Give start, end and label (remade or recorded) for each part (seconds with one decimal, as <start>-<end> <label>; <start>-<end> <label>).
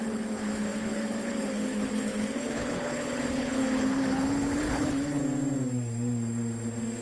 0.0-5.2 remade; 5.2-7.0 recorded